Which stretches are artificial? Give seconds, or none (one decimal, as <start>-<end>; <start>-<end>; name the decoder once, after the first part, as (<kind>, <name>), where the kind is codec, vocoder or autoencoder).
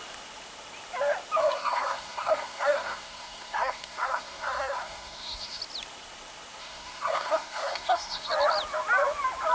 1.4-5.6 (codec, SNAC); 6.6-8.3